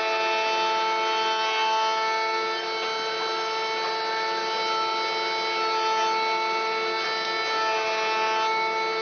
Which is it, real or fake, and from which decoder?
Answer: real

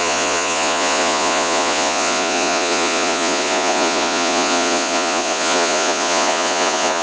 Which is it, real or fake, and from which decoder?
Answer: fake, vocoder, Vocos